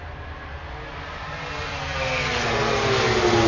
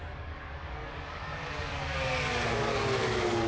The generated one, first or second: second